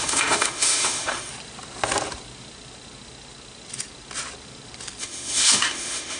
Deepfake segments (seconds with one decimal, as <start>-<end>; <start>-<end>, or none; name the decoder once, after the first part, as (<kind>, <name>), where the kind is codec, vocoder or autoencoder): 0.0-1.3 (autoencoder, DAC-VAE); 5.0-6.2